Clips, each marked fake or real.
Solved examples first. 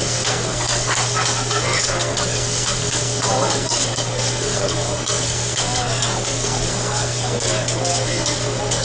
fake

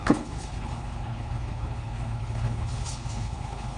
fake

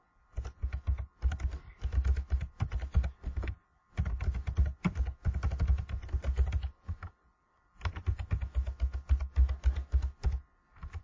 real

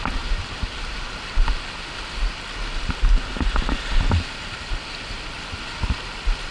real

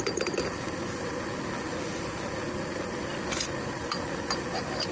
real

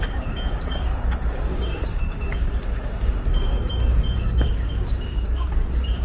fake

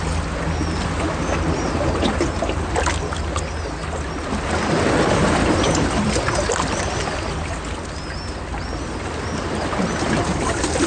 real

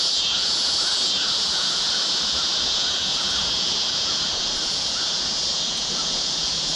fake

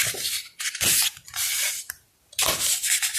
real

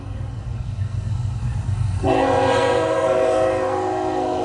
fake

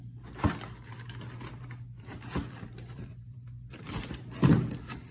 fake